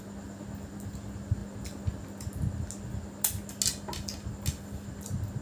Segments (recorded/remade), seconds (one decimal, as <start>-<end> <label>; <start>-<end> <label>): 0.0-5.4 recorded